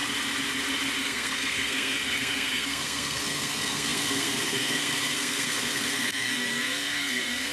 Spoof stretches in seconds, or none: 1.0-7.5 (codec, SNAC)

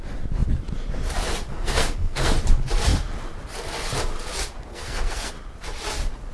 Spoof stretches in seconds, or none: 1.5-2.3 (codec, SNAC); 4.7-5.3

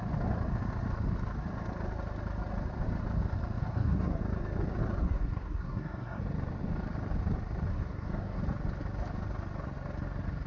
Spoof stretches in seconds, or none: 3.6-4.2 (codec, SNAC); 5.0-6.2; 7.7-8.4

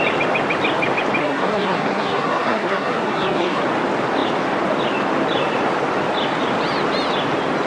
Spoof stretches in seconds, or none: 1.2-3.6 (codec, SNAC)

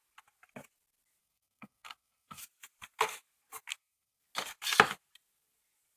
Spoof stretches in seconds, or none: 1.2-2.4 (codec, SNAC); 3.7-4.2

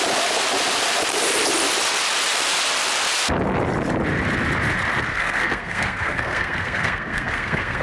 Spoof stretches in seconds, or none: 5.1-7.8 (codec, SNAC)